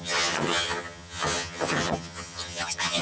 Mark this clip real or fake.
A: fake